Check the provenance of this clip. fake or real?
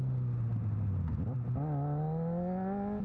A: real